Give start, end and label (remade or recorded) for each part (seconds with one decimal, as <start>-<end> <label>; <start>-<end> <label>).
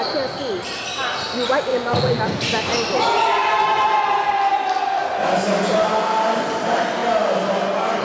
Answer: 0.0-1.7 recorded; 1.7-2.2 remade; 2.2-8.0 recorded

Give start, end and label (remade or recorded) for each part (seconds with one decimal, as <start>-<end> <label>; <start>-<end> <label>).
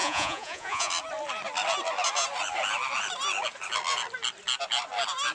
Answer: 0.0-0.9 remade; 0.9-5.3 recorded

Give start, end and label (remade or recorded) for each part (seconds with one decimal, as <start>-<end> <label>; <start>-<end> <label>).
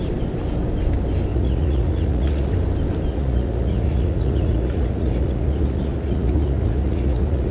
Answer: 0.0-1.3 recorded; 1.3-2.5 remade; 2.5-3.1 recorded; 3.1-7.5 remade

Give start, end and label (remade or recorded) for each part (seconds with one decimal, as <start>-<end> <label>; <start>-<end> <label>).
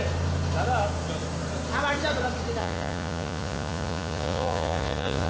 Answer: 0.0-2.6 recorded; 2.6-5.3 remade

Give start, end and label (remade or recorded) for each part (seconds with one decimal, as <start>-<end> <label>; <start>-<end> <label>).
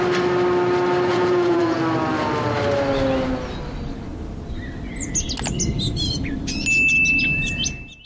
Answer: 0.0-1.1 recorded; 1.1-1.8 remade; 1.8-8.1 recorded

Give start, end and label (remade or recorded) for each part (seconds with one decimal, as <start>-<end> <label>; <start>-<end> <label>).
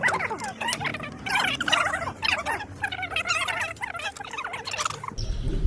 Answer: 0.0-5.7 recorded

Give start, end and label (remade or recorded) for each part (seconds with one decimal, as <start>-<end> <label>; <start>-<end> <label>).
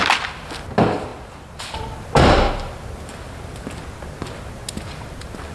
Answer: 0.0-5.5 recorded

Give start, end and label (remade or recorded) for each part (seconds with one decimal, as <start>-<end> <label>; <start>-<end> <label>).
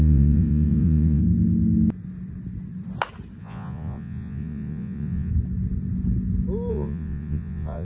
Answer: 0.0-1.2 remade; 1.2-3.4 recorded; 3.4-5.3 remade; 5.3-6.7 recorded; 6.7-7.8 remade